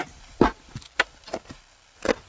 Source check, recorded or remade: recorded